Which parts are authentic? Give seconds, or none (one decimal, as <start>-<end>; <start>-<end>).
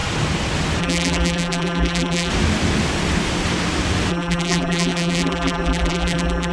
0.0-0.8; 2.3-4.1